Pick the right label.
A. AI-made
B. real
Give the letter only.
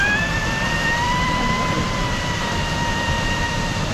A